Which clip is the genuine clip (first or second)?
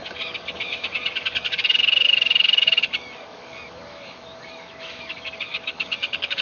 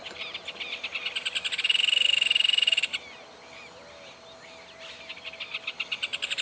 second